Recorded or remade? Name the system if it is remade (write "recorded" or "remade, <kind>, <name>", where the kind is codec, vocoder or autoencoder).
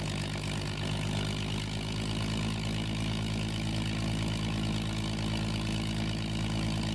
recorded